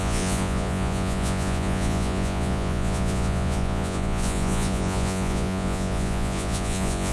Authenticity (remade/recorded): remade